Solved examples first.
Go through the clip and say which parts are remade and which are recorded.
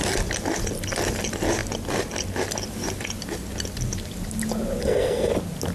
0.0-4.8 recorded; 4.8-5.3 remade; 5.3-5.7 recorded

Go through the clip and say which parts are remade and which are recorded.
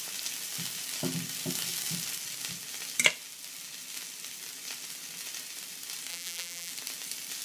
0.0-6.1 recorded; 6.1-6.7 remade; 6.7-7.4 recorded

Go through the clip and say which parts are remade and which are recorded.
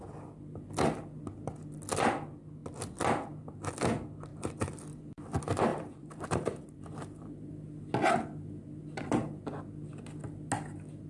0.0-4.3 recorded; 4.3-4.8 remade; 4.8-5.7 recorded; 5.7-7.5 remade; 7.5-11.1 recorded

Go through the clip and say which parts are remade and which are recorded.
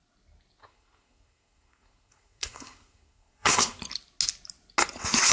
0.0-0.6 recorded; 0.6-3.8 remade; 3.8-5.3 recorded